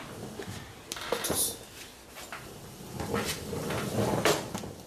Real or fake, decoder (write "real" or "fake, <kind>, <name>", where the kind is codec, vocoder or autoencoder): real